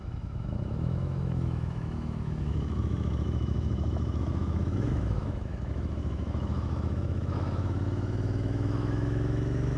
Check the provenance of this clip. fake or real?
fake